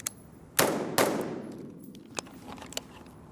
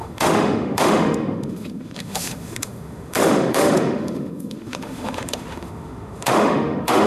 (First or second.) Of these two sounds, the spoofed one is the second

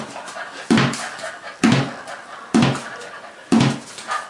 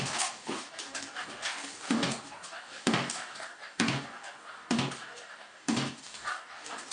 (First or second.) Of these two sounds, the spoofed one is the second